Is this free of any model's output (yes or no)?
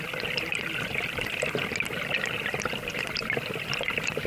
yes